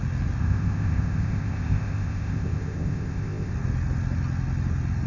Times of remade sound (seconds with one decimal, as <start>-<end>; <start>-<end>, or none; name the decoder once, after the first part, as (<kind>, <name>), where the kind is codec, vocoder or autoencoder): 0.4-3.5 (codec, ZipCodec)